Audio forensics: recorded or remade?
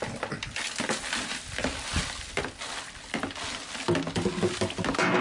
recorded